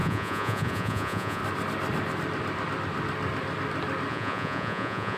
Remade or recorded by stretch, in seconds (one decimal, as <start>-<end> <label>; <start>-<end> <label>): 0.0-1.4 remade; 1.4-4.1 recorded; 4.1-5.2 remade

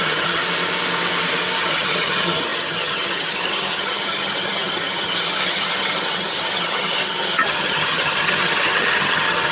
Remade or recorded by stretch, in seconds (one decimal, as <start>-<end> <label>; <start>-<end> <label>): 0.0-0.4 remade; 0.4-1.6 recorded; 1.6-9.5 remade

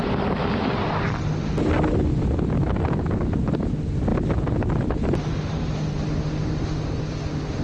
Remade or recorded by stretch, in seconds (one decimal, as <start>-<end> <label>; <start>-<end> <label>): 0.0-7.6 recorded

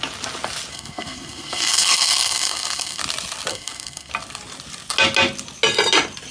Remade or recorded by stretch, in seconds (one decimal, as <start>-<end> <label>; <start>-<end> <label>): 0.0-0.7 recorded; 0.7-3.0 remade; 3.0-3.5 recorded; 3.5-4.1 remade; 4.1-6.3 recorded

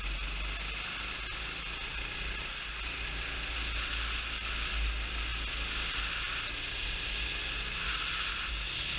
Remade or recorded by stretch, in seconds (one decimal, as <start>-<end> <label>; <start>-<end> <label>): 0.0-9.0 recorded

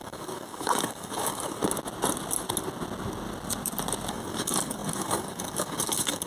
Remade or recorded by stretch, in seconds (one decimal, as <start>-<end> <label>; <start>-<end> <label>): 0.0-1.6 remade; 1.6-4.1 recorded; 4.1-6.3 remade